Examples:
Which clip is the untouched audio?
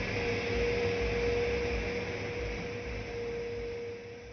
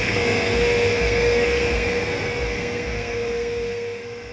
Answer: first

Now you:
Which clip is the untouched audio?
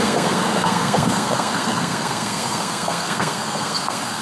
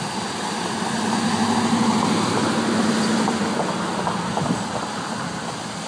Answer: second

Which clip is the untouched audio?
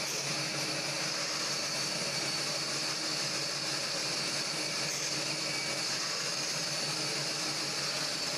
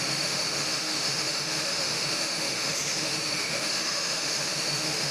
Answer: first